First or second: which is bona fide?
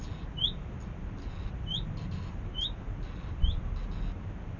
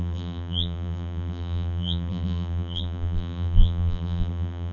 first